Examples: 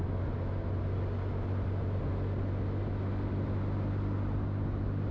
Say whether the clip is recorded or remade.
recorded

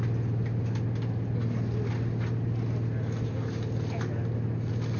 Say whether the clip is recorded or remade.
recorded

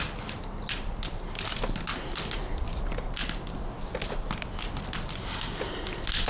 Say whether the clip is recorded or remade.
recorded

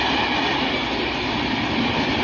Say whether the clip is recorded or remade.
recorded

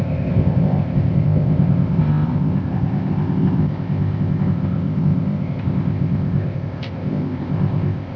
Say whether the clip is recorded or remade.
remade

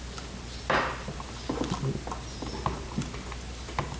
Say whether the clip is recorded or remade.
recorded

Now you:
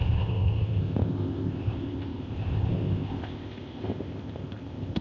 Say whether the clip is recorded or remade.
remade